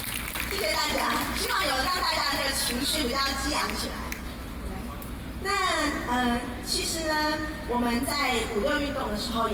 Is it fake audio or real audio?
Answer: real